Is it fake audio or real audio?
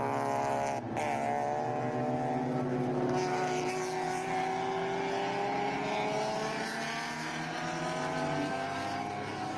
real